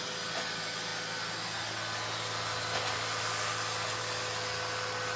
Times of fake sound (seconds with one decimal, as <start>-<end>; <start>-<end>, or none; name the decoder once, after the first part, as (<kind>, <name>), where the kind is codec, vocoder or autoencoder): none